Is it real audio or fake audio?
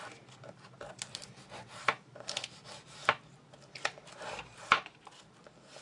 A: real